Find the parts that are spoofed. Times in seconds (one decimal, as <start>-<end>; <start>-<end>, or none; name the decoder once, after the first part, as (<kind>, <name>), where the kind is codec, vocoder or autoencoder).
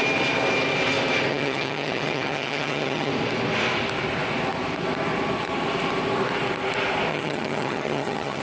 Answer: 1.3-3.1 (vocoder, HiFi-GAN); 7.1-8.4